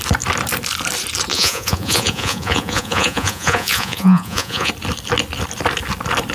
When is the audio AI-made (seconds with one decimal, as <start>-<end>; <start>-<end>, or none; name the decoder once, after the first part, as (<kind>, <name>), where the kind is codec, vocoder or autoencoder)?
1.3-4.7 (vocoder, Vocos)

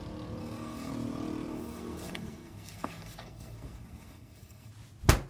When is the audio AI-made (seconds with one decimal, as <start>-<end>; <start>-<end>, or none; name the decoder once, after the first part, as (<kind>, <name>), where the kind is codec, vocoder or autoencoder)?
0.4-0.9 (codec, SNAC); 1.5-4.7

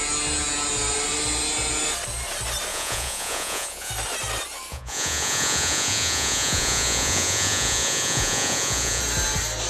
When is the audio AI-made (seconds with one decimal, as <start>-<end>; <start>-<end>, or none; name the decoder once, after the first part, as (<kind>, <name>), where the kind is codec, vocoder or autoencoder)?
2.7-3.9 (vocoder, Vocos); 4.7-9.0

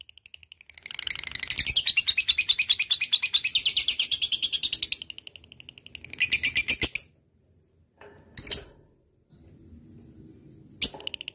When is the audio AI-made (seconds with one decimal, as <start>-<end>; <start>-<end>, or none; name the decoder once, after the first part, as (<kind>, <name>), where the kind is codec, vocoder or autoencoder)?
3.8-4.7 (vocoder, BigVGAN v2)

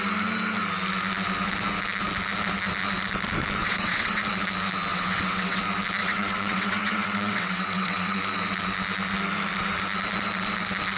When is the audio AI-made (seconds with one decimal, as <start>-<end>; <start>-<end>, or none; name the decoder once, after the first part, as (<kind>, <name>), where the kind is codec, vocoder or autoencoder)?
3.6-4.2 (vocoder, WaveNeXt); 4.9-5.6; 6.0-8.2

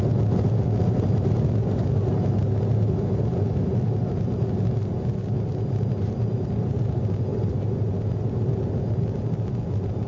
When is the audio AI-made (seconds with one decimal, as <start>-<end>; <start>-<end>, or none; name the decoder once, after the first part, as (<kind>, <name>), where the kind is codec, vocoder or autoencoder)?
7.3-8.1 (vocoder, BigVGAN v2)

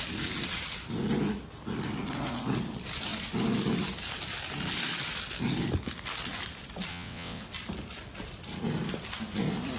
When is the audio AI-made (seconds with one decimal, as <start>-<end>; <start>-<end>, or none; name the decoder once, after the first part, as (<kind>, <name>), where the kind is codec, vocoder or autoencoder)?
6.9-7.4 (vocoder, WaveNeXt)

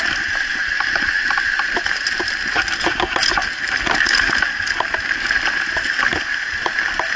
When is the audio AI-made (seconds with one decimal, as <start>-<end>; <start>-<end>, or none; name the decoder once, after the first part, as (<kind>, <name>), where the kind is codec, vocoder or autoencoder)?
none